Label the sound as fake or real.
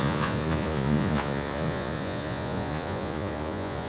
fake